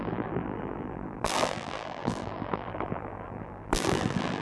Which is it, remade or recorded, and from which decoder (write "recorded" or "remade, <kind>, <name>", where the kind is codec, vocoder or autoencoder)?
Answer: remade, vocoder, BigVGAN v2